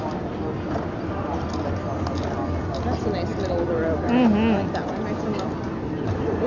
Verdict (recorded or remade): recorded